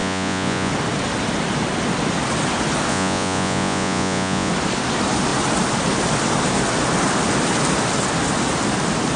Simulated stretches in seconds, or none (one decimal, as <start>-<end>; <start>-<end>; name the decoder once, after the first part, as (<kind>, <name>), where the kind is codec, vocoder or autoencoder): 0.0-0.7 (vocoder, Vocos); 2.9-4.5